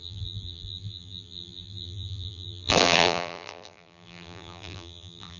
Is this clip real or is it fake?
fake